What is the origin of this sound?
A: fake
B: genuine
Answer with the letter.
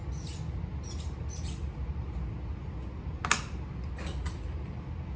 B